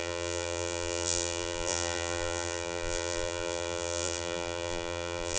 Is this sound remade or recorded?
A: remade